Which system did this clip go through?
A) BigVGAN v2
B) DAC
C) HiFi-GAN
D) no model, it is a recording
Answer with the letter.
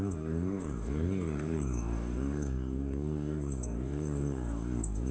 B